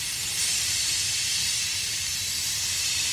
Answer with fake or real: fake